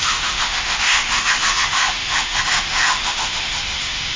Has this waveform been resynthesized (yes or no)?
yes